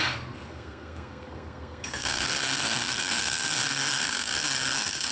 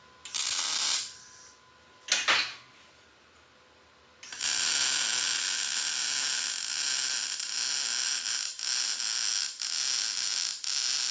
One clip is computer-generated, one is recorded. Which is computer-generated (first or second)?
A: first